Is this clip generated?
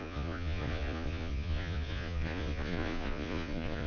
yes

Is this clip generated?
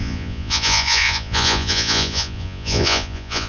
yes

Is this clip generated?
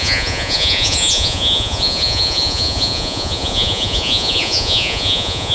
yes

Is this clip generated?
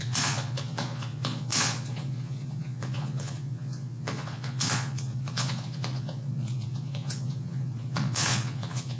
yes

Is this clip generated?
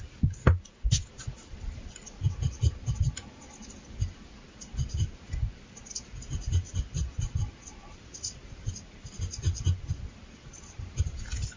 no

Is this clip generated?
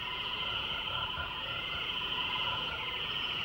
yes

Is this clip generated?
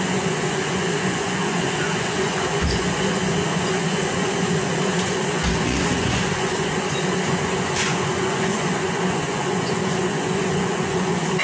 yes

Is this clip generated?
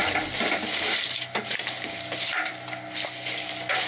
no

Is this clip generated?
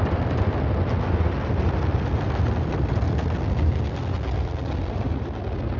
no